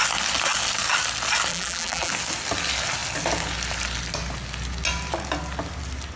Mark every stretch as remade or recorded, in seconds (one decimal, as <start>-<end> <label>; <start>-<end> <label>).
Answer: 0.0-1.5 recorded; 1.5-2.1 remade; 2.1-6.2 recorded